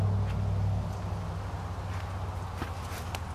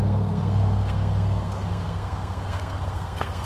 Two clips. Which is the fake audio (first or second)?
second